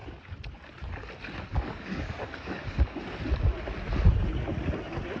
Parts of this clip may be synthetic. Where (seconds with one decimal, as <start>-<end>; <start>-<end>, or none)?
1.5-3.0